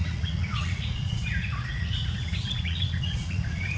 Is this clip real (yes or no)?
no